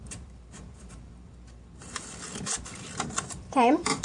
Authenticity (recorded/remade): remade